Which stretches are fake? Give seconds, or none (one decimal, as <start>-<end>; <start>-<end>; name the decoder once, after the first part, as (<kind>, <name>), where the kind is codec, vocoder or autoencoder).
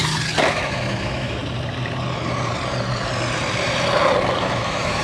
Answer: 0.5-1.4 (autoencoder, DAC-VAE); 4.4-5.0